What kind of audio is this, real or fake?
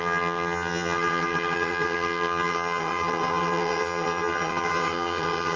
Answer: fake